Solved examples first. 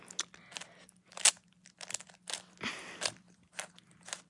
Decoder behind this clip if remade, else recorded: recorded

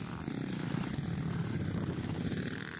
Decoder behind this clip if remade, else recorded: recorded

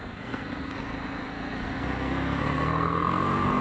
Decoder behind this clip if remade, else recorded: remade, codec, SNAC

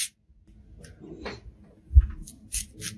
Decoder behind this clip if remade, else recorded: recorded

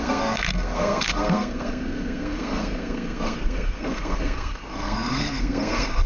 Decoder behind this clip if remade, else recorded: remade, codec, SNAC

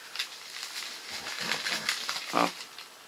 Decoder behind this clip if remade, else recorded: recorded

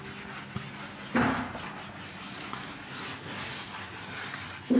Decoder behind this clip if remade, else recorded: recorded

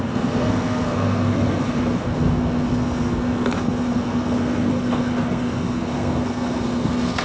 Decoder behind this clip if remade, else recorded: remade, codec, SNAC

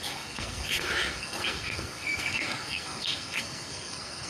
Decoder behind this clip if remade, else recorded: remade, codec, SNAC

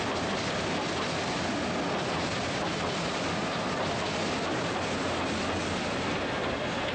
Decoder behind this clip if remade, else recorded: recorded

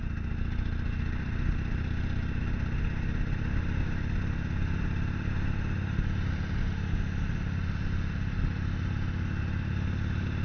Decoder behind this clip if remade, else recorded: recorded